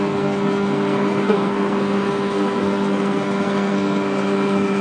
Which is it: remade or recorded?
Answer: remade